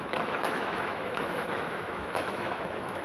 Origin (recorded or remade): remade